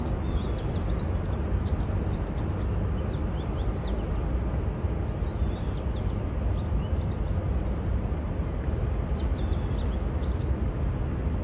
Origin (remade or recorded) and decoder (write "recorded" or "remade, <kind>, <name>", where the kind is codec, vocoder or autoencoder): recorded